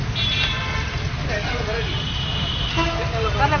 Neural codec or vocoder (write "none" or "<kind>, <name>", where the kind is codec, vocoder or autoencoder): none